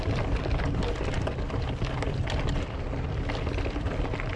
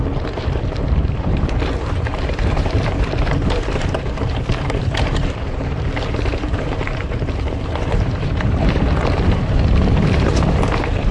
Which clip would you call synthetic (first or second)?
second